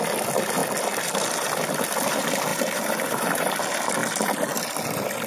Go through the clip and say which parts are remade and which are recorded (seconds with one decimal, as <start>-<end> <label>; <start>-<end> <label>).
0.0-2.5 recorded; 2.5-3.5 remade; 3.5-5.3 recorded

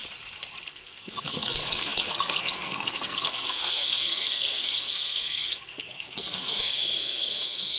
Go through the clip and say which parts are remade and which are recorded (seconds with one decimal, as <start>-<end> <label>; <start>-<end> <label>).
0.0-0.7 recorded; 0.7-7.8 remade

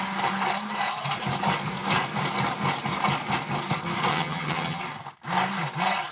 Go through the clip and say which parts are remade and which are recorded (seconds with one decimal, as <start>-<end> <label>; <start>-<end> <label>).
0.0-4.1 recorded; 4.1-4.8 remade; 4.8-6.1 recorded

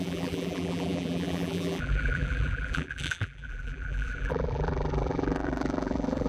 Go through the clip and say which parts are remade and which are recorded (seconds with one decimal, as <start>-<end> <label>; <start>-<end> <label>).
0.0-6.3 remade

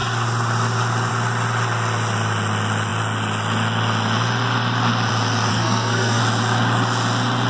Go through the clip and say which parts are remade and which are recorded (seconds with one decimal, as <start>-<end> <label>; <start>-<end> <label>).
0.0-5.5 recorded; 5.5-6.2 remade; 6.2-7.5 recorded